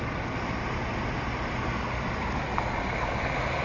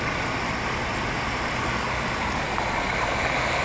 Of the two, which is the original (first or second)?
first